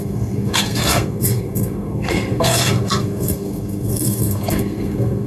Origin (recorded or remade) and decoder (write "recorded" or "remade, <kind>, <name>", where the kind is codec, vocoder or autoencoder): remade, codec, SNAC